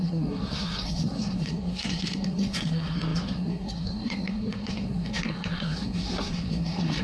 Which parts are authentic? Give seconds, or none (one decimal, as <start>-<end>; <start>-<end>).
none